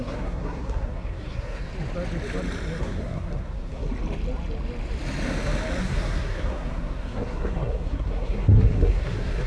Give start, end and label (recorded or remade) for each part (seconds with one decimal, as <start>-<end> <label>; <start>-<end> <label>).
0.0-1.7 remade; 1.7-2.8 recorded; 2.8-3.9 remade; 3.9-5.8 recorded; 5.8-9.5 remade